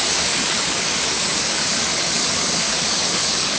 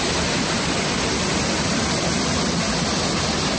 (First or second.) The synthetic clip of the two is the first